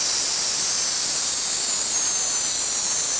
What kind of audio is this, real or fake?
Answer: real